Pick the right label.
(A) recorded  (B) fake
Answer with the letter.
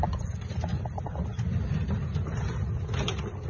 A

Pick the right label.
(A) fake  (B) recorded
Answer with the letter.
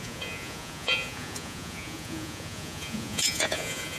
A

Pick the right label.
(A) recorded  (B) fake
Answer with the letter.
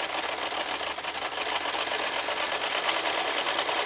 A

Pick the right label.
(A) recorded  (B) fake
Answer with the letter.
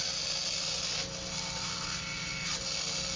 A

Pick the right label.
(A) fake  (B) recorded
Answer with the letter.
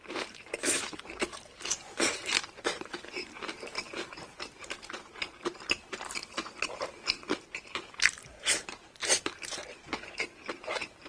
A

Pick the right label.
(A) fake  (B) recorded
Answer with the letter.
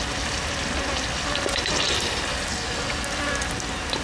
B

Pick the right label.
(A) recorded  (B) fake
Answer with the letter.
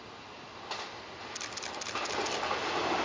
A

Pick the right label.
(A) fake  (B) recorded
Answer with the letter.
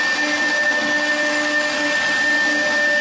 B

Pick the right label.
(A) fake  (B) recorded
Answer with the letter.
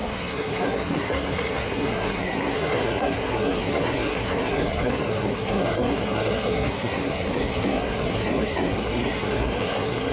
A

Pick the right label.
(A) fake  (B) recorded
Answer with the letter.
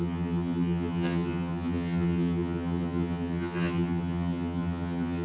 A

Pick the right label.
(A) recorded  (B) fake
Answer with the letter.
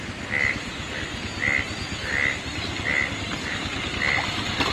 A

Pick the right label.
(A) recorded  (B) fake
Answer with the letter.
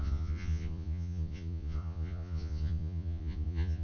B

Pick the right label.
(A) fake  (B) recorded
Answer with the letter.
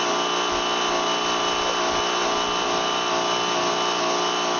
B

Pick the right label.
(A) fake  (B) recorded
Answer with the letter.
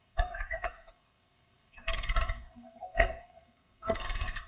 A